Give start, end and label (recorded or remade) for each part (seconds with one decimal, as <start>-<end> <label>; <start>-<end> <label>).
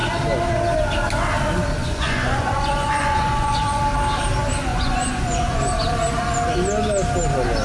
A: 0.0-1.8 recorded; 1.8-3.8 remade; 3.8-4.7 recorded; 4.7-5.6 remade; 5.6-7.6 recorded